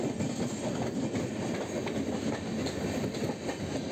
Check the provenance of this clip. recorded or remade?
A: recorded